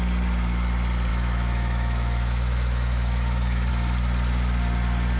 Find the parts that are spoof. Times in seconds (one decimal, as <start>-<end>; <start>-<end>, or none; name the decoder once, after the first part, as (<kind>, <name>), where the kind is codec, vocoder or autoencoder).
1.1-3.7 (autoencoder, DAC-VAE)